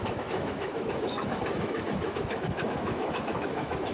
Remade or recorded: remade